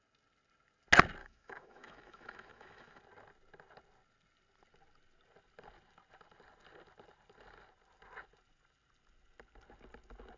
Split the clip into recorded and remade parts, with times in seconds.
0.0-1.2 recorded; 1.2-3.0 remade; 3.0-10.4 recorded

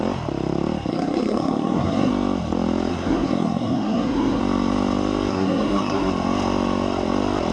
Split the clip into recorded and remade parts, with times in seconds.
0.0-0.9 recorded; 0.9-2.1 remade; 2.1-2.9 recorded; 2.9-4.4 remade; 4.4-5.3 recorded; 5.3-6.1 remade; 6.1-7.5 recorded